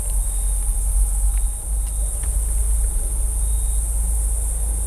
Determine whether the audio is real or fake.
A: real